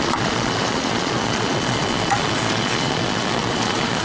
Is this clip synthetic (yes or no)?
yes